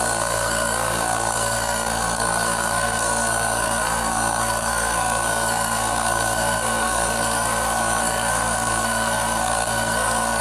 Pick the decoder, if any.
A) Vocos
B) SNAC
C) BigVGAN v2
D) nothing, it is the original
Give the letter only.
B